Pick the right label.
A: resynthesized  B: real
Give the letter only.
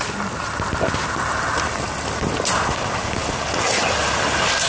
B